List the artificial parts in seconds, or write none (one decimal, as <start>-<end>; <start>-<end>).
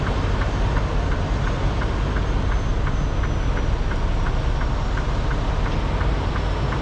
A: none